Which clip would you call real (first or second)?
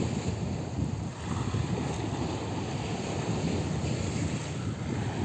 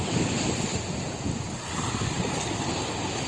first